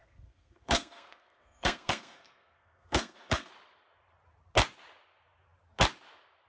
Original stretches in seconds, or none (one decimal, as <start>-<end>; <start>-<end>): 3.5-6.5